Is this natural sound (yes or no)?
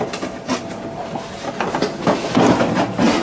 yes